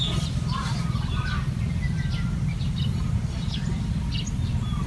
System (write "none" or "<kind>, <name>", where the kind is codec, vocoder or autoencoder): none